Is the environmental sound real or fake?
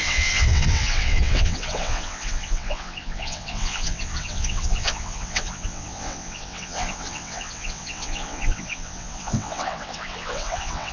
fake